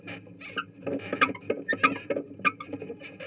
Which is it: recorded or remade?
recorded